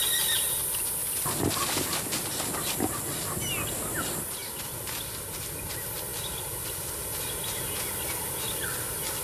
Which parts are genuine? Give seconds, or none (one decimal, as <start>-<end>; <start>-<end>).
0.0-1.0; 2.0-4.4; 4.9-6.1; 7.2-9.2